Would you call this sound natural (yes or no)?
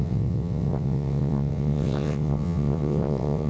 no